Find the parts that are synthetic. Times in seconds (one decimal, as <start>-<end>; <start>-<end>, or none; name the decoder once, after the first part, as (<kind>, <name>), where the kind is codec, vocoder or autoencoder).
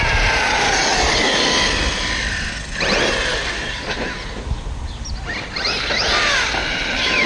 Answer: none